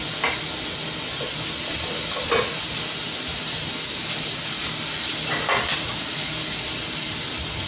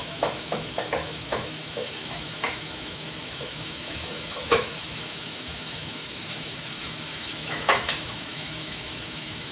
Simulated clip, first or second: second